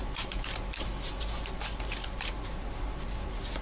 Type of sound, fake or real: fake